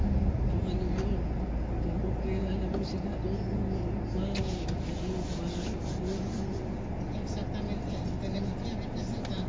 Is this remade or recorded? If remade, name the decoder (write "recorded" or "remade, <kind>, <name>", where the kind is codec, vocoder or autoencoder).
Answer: recorded